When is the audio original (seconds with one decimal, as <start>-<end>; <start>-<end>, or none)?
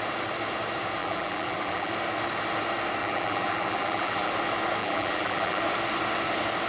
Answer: 0.0-1.0; 1.9-3.0; 4.3-4.8; 5.6-6.7